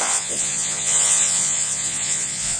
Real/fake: fake